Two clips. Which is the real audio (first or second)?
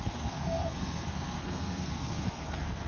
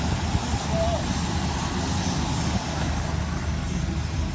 second